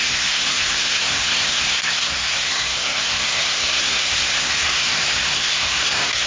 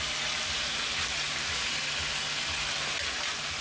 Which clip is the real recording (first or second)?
second